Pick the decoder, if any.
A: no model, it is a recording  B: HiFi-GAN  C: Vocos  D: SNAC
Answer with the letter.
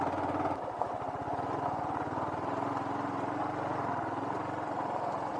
A